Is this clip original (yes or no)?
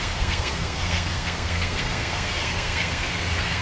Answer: no